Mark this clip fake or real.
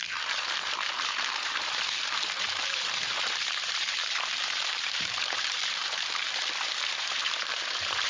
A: fake